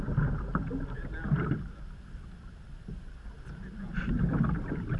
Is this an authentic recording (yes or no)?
yes